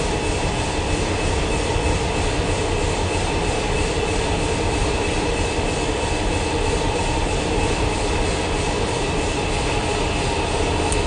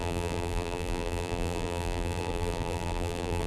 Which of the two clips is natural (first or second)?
first